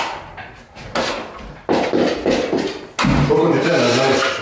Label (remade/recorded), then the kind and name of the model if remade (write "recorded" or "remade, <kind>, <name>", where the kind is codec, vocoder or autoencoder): recorded